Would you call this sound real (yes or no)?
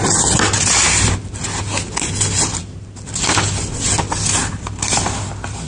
yes